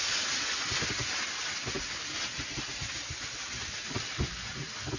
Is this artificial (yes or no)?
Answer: no